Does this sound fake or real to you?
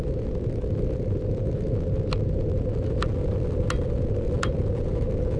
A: real